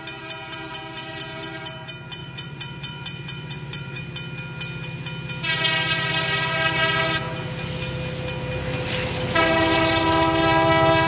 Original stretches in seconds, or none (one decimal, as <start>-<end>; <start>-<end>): 0.0-2.2; 4.0-11.1